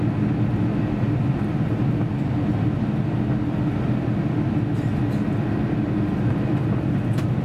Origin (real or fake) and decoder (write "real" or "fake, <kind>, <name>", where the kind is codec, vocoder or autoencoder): real